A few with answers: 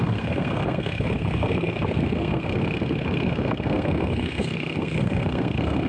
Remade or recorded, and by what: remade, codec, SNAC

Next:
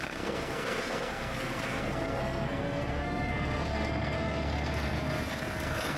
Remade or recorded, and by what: remade, codec, SNAC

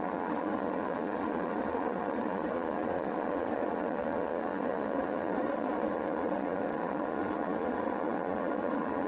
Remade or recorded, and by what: remade, vocoder, Vocos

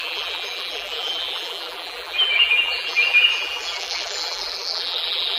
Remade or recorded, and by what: remade, vocoder, BigVGAN v2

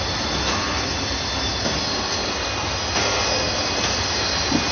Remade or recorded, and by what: recorded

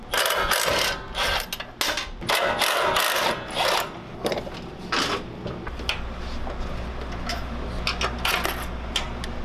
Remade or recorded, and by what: recorded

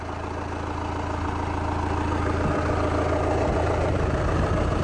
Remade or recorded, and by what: recorded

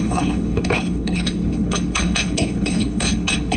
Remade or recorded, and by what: remade, codec, HILCodec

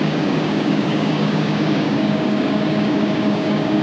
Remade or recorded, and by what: remade, codec, DAC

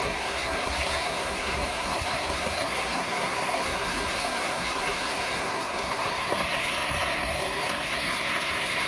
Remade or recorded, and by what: remade, codec, SNAC